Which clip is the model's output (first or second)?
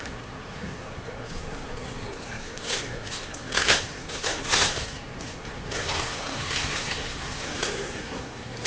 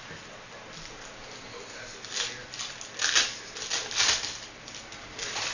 first